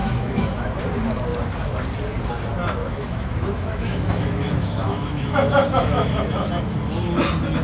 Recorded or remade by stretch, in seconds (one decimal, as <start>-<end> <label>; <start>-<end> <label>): 0.0-0.8 remade; 0.8-2.8 recorded; 2.8-6.5 remade; 6.5-7.6 recorded